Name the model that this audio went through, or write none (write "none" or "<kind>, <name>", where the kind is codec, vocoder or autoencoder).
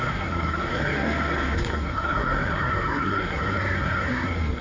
codec, SNAC